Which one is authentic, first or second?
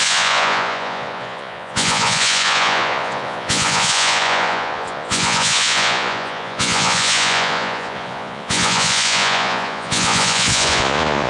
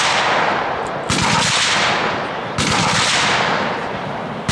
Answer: second